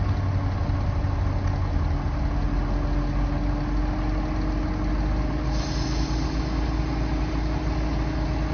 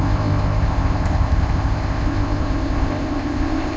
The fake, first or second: second